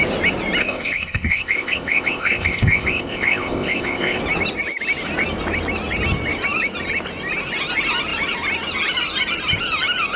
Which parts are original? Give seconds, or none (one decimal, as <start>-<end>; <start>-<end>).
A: 0.0-0.6; 4.2-10.2